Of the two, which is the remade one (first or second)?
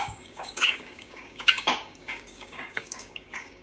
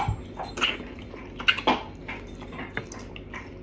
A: first